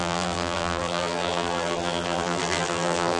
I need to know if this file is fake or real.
fake